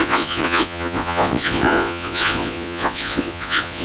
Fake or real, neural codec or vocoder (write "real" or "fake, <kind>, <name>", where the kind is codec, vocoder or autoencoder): fake, vocoder, Vocos